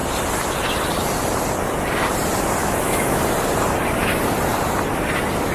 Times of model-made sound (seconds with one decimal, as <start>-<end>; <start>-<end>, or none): 2.6-3.2